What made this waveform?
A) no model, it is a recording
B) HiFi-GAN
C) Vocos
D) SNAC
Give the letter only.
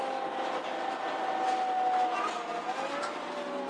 A